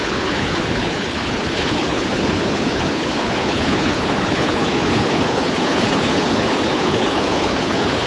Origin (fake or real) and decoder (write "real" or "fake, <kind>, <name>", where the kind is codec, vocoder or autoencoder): fake, codec, HILCodec